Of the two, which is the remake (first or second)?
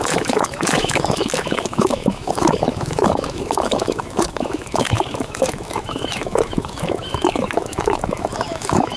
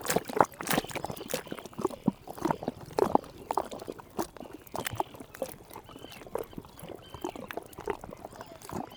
first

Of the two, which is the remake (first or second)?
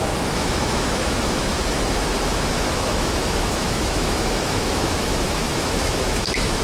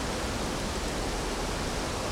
first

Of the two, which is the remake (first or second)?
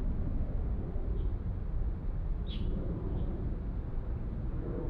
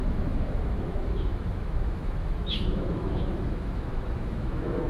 second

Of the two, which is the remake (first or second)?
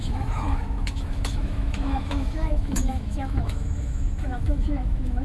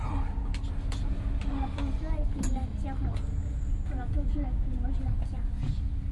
first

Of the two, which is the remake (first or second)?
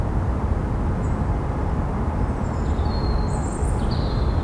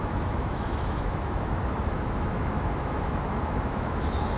second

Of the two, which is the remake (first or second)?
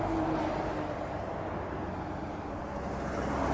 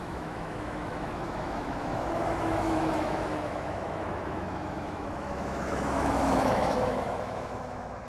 second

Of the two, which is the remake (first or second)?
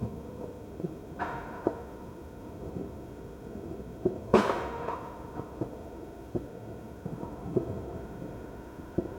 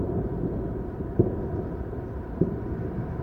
first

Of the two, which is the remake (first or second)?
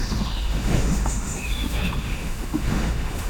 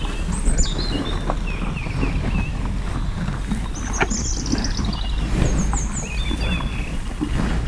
first